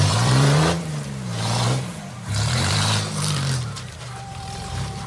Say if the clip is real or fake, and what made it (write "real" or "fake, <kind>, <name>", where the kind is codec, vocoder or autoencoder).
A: fake, vocoder, BigVGAN v2